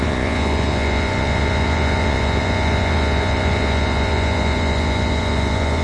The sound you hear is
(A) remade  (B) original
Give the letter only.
A